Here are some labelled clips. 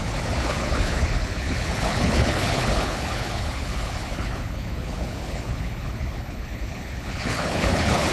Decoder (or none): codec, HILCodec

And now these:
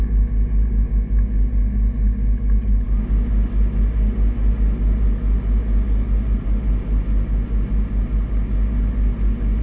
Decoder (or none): none